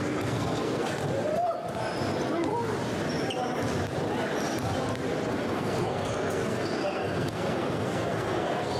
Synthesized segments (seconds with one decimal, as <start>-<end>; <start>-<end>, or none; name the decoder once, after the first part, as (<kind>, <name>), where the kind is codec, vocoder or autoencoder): 0.0-1.0 (codec, SNAC); 5.3-8.8